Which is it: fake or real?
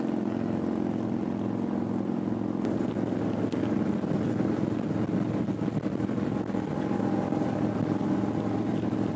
real